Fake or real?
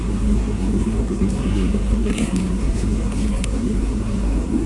fake